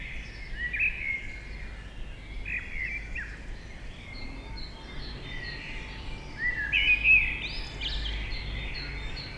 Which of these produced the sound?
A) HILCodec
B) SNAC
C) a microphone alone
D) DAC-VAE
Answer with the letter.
C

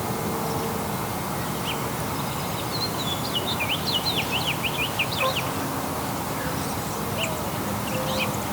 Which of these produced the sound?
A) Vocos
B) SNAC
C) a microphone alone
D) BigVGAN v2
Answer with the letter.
C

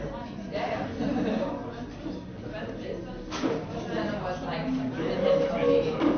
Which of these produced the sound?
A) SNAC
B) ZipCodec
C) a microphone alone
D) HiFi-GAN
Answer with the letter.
C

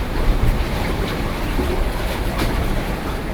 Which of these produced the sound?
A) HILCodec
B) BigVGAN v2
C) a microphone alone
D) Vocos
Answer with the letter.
B